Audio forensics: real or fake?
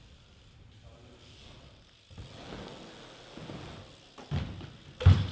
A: real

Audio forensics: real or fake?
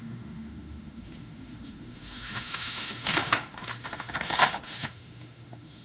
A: fake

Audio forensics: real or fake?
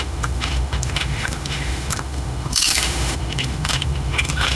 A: fake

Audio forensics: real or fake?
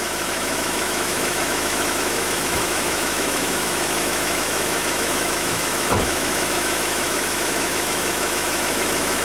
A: fake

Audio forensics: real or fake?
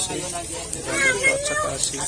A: real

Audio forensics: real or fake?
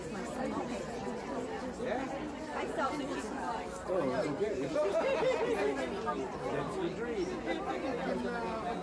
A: real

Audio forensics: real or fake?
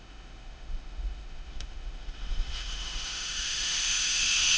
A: fake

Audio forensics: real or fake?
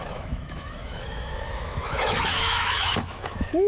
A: fake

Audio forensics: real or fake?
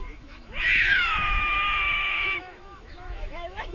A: fake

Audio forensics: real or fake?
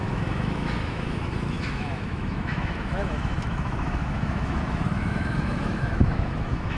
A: fake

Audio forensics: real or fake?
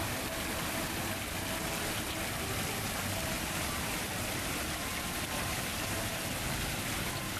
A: real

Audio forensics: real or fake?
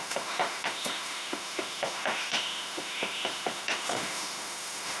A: fake